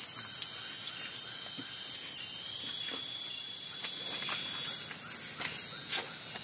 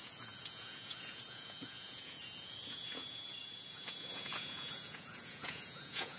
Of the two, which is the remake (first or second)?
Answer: second